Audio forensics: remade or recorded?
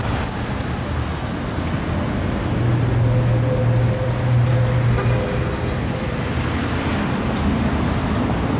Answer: recorded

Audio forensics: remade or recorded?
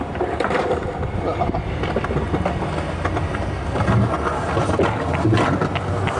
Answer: recorded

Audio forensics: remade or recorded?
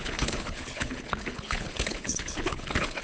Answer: remade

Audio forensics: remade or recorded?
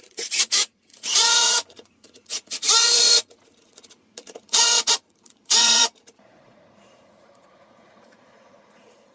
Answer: remade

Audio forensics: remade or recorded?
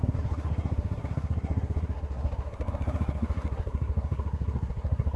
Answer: remade